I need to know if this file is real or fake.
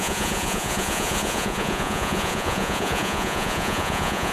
fake